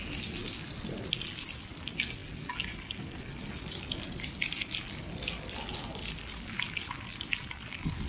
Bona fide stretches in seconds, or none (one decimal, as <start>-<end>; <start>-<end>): 0.0-8.1